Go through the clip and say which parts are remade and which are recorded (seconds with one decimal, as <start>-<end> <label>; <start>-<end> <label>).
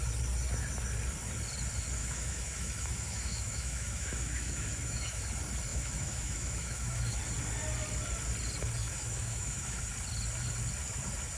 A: 0.0-2.0 recorded; 2.0-5.2 remade; 5.2-5.7 recorded; 5.7-7.2 remade; 7.2-8.8 recorded; 8.8-9.8 remade; 9.8-11.4 recorded